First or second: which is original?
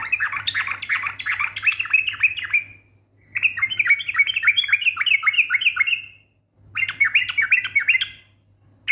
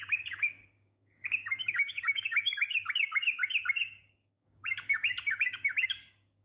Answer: first